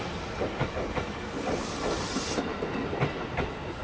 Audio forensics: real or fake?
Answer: real